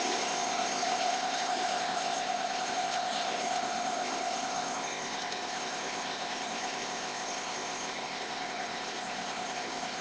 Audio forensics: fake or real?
fake